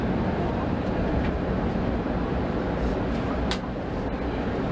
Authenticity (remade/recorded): recorded